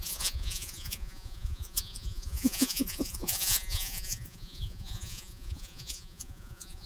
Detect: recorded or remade remade